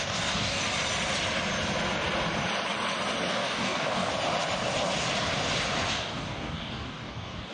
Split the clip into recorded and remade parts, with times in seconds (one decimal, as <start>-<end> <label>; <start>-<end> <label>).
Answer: 0.0-0.6 remade; 0.6-3.3 recorded; 3.3-4.1 remade; 4.1-5.9 recorded; 5.9-7.5 remade